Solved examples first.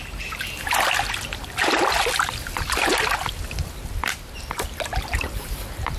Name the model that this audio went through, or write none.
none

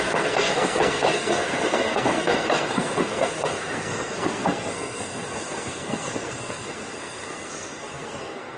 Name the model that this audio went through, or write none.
codec, SNAC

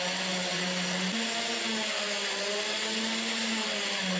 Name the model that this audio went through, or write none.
none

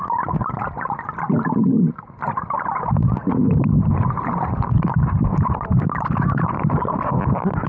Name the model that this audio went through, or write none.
none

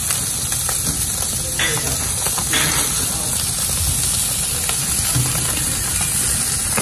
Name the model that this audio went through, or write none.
none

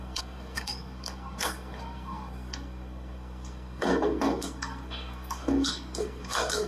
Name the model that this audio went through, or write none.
codec, SNAC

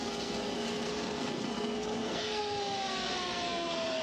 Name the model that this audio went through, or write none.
codec, SNAC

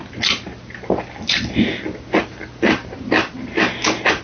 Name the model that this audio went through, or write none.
none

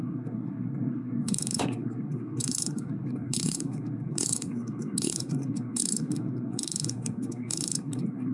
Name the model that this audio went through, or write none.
codec, SNAC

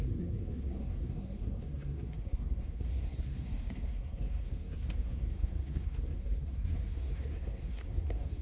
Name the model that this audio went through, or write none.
codec, SNAC